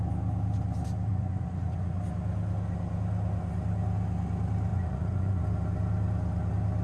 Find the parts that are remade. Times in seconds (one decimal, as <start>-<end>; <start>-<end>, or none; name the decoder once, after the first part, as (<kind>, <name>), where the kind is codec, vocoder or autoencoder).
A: 1.1-2.0 (vocoder, Vocos); 4.7-5.4